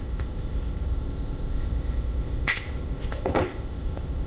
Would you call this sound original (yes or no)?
no